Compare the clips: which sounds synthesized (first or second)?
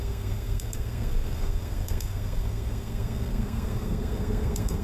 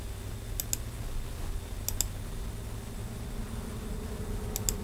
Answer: first